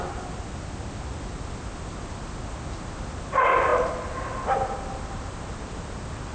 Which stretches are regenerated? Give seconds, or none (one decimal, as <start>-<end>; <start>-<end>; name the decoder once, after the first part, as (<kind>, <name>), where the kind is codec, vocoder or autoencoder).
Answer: none